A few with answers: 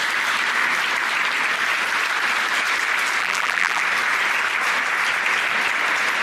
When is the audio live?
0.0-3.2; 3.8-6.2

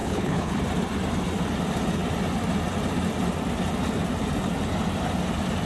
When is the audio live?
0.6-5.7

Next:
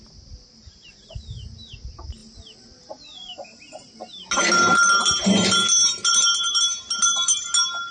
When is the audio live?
0.0-7.9

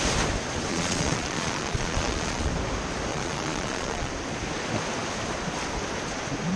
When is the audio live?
0.0-0.7; 2.5-3.1; 4.1-6.6